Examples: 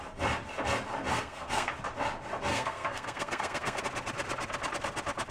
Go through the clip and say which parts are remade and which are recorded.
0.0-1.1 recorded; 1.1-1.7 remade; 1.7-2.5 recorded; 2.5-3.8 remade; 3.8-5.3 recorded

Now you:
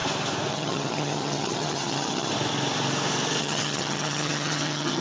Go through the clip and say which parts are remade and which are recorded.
0.0-0.5 recorded; 0.5-2.3 remade; 2.3-3.4 recorded; 3.4-5.0 remade

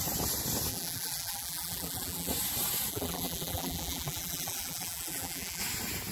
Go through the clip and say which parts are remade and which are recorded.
0.0-0.7 recorded; 0.7-2.3 remade; 2.3-2.9 recorded; 2.9-5.6 remade; 5.6-6.1 recorded

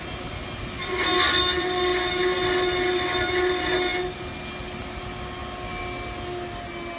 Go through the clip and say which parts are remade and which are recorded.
0.0-7.0 recorded

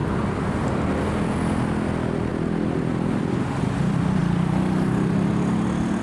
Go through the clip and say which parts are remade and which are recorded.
0.0-0.7 remade; 0.7-2.3 recorded; 2.3-3.7 remade; 3.7-4.2 recorded; 4.2-6.0 remade

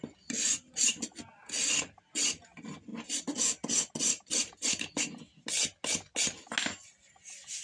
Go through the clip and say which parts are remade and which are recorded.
0.0-7.6 recorded

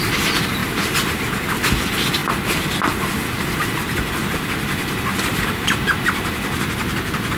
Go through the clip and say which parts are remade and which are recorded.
0.0-7.4 recorded